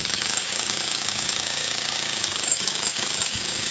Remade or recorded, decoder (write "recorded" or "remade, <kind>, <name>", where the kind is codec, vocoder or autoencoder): remade, codec, DAC